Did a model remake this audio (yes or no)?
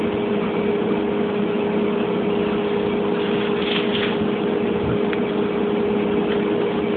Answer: no